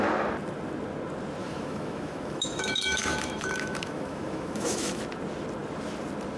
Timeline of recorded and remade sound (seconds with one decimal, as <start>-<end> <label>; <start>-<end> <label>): 0.0-1.4 recorded; 1.4-5.0 remade; 5.0-6.4 recorded